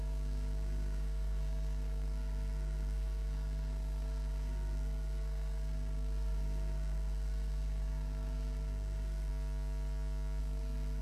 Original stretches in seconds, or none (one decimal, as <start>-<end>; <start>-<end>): 9.3-10.4